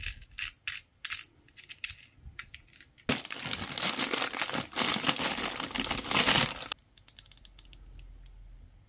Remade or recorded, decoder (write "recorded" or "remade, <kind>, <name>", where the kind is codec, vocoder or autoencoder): recorded